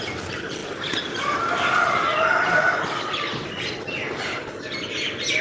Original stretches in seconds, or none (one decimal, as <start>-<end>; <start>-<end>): 0.0-5.4